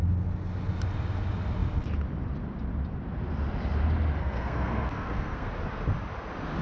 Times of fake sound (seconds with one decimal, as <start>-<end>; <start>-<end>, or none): 4.2-5.5